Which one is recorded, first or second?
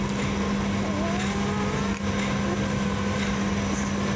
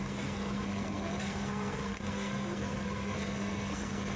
first